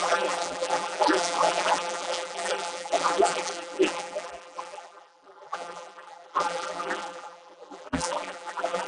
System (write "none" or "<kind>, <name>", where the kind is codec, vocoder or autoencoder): vocoder, BigVGAN v2